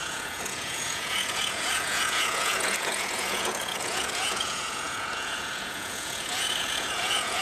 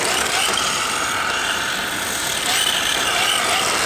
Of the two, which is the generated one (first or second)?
first